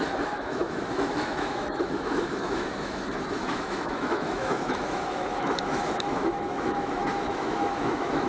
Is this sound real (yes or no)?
no